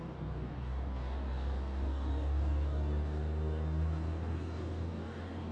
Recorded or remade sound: remade